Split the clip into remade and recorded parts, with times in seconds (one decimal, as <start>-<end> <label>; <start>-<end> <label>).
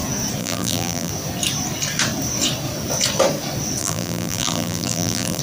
0.0-0.4 recorded; 0.4-1.1 remade; 1.1-3.8 recorded; 3.8-5.4 remade